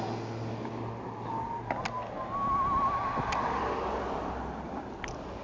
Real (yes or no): yes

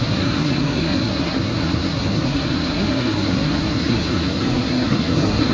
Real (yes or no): no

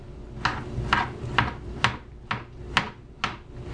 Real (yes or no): yes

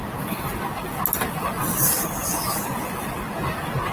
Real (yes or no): yes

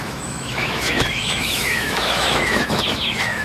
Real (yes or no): no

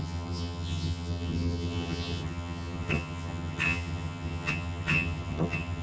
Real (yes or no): no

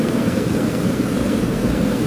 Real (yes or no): no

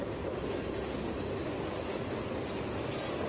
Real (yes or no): yes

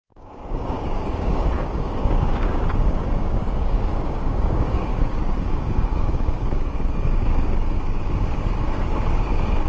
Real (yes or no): no